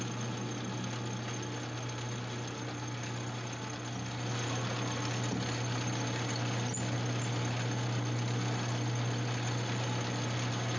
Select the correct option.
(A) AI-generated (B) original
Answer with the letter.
B